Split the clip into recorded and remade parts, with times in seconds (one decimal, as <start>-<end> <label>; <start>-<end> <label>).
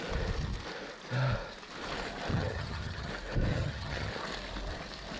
0.0-2.3 recorded; 2.3-3.1 remade; 3.1-3.5 recorded; 3.5-4.1 remade; 4.1-5.2 recorded